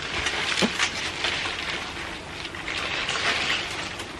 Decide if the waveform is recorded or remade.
recorded